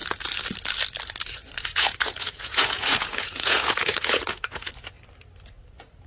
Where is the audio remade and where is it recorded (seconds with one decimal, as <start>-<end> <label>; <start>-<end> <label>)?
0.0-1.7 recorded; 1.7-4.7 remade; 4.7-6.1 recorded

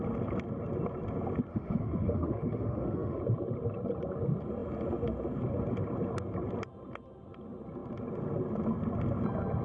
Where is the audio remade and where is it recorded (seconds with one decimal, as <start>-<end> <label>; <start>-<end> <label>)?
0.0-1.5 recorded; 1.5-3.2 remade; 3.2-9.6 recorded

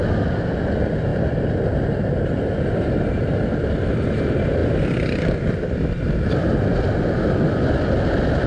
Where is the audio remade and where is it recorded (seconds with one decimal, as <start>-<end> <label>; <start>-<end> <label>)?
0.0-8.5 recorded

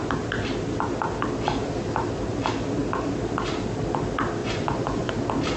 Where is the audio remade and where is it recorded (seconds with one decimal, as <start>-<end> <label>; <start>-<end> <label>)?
0.0-4.4 recorded; 4.4-5.1 remade; 5.1-5.6 recorded

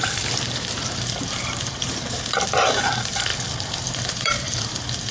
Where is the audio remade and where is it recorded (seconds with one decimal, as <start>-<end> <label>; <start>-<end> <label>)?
0.0-5.1 remade

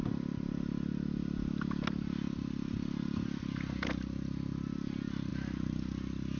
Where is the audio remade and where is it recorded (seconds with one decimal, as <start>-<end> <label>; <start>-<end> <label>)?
0.0-6.4 recorded